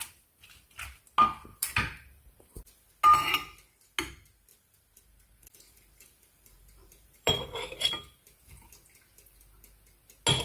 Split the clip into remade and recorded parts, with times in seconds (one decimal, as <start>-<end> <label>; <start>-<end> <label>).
0.0-1.5 recorded; 1.5-2.9 remade; 2.9-4.5 recorded; 4.5-7.3 remade; 7.3-10.4 recorded